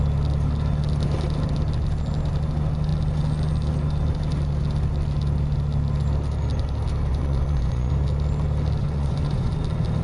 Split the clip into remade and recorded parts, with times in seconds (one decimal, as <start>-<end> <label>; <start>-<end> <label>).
0.0-7.1 recorded; 7.1-7.9 remade; 7.9-8.8 recorded; 8.8-9.5 remade; 9.5-10.0 recorded